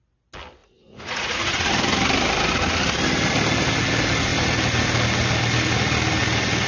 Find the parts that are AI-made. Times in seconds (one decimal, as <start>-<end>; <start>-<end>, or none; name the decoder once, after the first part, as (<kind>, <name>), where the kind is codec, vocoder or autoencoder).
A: 0.6-1.7 (vocoder, Vocos)